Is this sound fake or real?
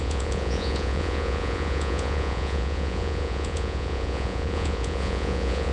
fake